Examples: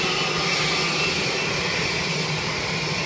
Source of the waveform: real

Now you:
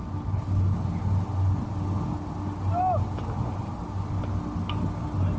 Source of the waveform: real